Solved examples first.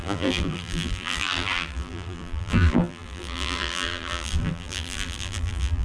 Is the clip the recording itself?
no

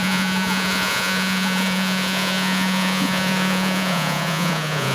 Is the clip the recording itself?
no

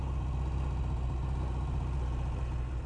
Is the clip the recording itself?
yes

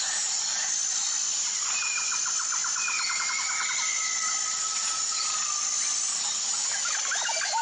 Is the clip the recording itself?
yes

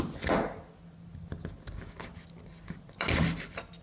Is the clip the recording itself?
yes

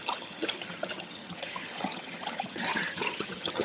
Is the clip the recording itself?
no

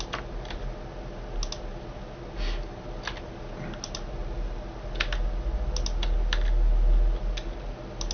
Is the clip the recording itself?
yes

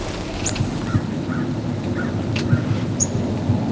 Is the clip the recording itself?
yes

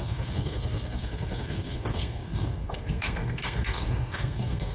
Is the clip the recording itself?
no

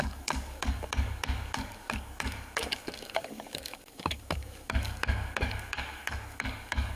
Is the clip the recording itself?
no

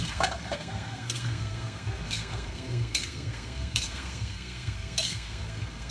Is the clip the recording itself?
no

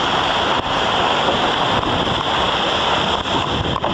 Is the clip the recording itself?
yes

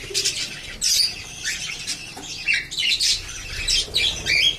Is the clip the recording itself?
yes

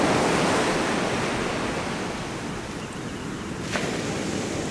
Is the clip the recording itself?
yes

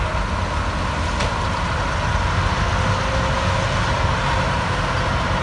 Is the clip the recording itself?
yes